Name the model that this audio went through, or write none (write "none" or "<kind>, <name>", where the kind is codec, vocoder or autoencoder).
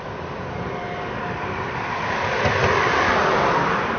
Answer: none